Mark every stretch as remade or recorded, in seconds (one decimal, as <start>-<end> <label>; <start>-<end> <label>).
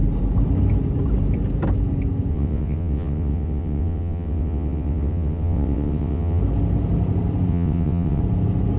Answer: 0.0-2.3 recorded; 2.3-6.4 remade; 6.4-7.5 recorded; 7.5-8.2 remade; 8.2-8.8 recorded